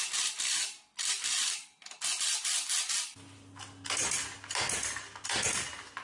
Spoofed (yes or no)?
no